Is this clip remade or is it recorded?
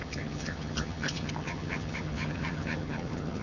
remade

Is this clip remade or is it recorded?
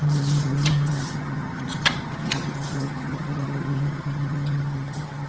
remade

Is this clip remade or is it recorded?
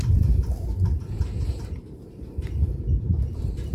remade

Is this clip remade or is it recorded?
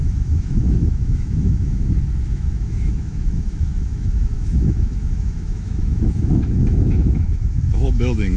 remade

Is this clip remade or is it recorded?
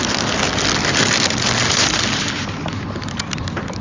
recorded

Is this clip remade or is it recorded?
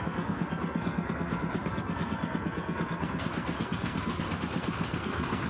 remade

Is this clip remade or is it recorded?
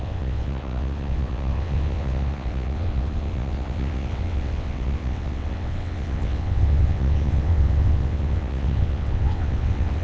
remade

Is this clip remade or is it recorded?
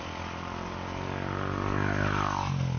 recorded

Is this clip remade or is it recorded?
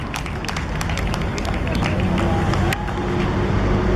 recorded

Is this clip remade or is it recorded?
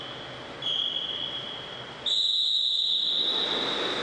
recorded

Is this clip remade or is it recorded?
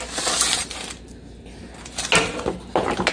recorded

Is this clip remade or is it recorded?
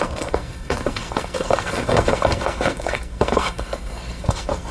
remade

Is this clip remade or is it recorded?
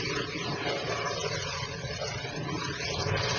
recorded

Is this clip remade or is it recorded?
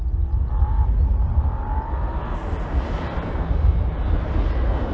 recorded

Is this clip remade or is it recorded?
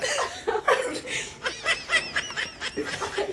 recorded